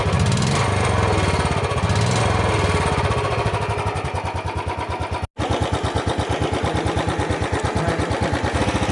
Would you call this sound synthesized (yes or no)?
no